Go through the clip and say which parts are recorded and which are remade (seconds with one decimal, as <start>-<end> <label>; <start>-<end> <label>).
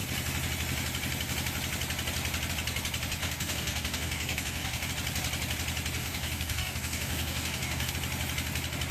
0.0-3.2 recorded; 3.2-4.9 remade; 4.9-6.0 recorded; 6.0-7.9 remade; 7.9-8.9 recorded